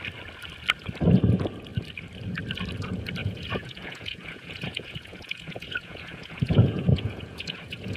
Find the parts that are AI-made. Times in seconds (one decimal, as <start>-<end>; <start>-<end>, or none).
3.2-8.0